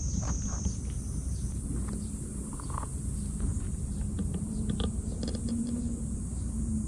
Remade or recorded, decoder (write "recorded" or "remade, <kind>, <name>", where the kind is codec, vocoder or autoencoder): remade, vocoder, BigVGAN v2